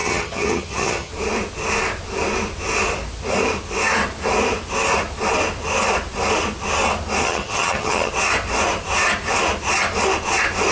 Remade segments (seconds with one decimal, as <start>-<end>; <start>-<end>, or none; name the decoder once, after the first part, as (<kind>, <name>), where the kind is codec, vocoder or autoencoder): 0.0-1.1 (vocoder, HiFi-GAN); 7.2-8.1